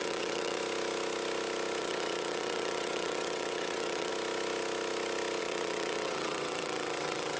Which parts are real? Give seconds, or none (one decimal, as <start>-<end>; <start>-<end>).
0.6-1.8; 4.1-5.4